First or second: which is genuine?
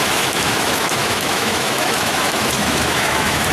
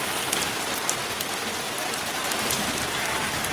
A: second